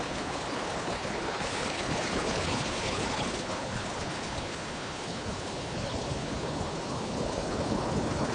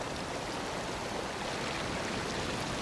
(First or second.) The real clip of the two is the second